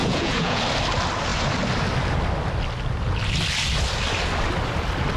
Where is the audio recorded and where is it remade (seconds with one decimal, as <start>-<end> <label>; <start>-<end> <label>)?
0.0-0.6 remade; 0.6-5.2 recorded